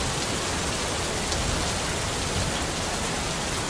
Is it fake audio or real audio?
real